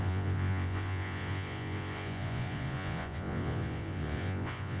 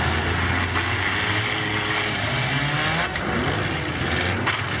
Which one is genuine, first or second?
second